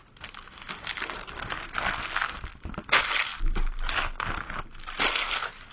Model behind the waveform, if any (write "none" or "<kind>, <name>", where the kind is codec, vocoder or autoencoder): none